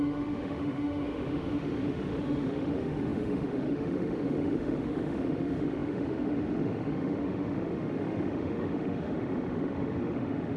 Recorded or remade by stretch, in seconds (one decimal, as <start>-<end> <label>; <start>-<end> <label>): 0.0-10.6 remade